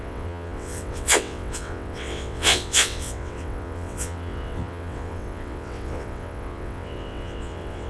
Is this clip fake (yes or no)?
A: yes